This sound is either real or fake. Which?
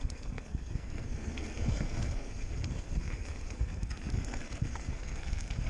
fake